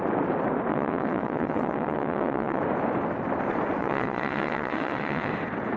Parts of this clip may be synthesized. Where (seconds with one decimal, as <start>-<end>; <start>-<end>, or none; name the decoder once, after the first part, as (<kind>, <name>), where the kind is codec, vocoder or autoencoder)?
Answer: 0.7-2.6 (vocoder, WaveNeXt); 3.8-5.3